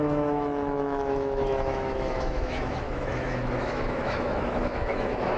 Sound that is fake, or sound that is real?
fake